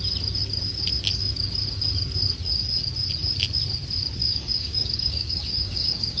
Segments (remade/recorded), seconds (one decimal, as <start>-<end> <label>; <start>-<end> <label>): 0.0-4.2 recorded; 4.2-6.2 remade